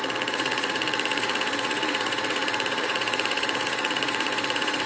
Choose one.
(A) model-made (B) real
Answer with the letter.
A